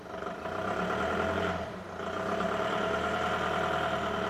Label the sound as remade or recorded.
recorded